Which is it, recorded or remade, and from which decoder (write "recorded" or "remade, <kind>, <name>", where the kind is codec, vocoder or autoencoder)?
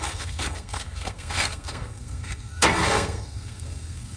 remade, codec, SNAC